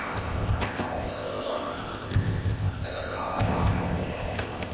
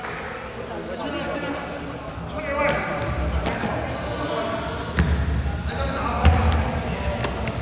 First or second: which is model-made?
first